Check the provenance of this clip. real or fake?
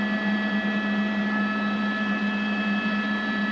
real